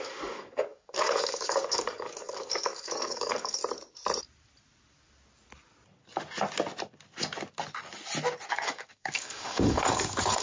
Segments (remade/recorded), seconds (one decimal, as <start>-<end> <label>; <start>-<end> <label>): 0.0-3.6 remade; 3.6-8.5 recorded; 8.5-10.4 remade